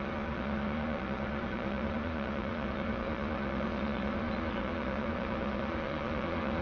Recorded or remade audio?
remade